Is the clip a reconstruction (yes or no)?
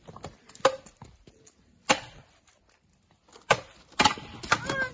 no